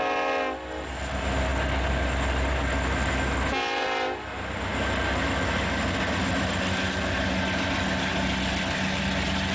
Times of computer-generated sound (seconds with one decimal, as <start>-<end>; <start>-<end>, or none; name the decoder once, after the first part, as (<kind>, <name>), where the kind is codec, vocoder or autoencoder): none